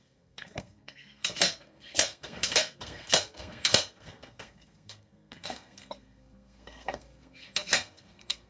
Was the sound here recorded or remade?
remade